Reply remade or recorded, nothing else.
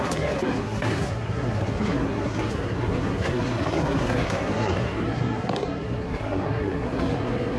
remade